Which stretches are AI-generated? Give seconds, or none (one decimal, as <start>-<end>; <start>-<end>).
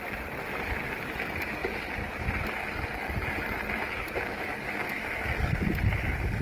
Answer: none